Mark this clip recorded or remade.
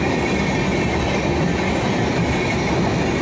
recorded